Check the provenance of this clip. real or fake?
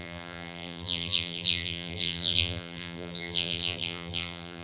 fake